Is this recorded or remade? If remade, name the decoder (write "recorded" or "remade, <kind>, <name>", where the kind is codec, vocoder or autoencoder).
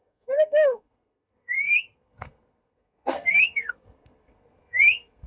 remade, codec, SNAC